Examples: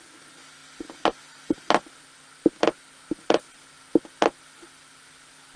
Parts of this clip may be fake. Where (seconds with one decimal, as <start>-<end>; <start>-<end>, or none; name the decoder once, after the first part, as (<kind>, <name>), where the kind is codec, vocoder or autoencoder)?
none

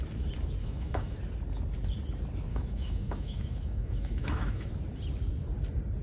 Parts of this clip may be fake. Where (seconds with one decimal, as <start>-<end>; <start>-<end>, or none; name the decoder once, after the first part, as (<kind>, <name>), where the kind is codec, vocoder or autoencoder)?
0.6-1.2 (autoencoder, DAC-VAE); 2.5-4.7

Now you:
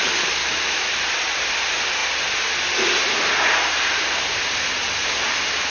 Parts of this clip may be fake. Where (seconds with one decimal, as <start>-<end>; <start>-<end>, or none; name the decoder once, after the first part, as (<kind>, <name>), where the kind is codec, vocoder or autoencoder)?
0.4-0.9 (autoencoder, DAC-VAE)